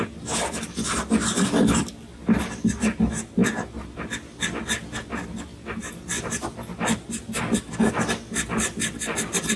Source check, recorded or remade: recorded